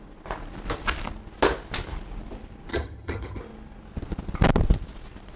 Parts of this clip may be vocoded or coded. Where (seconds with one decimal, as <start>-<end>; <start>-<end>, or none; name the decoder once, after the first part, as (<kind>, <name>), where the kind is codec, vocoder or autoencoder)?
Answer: 2.7-3.4 (vocoder, HiFi-GAN)